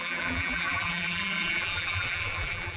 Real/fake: fake